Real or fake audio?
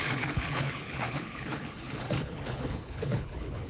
fake